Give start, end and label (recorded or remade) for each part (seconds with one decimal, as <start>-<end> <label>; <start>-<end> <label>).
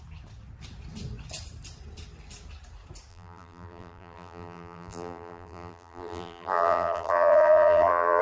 0.0-3.1 recorded; 3.1-8.2 remade